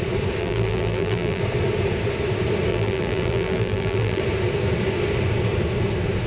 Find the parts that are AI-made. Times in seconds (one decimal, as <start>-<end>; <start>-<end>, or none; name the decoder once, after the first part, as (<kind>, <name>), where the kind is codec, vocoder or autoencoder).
0.4-1.4 (vocoder, BigVGAN v2); 2.7-4.2